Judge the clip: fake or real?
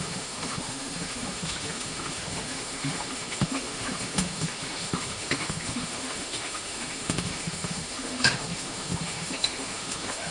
fake